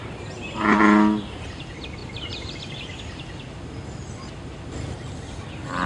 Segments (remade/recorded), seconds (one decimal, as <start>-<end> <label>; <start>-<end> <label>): 0.0-2.0 recorded; 2.0-2.5 remade; 2.5-5.9 recorded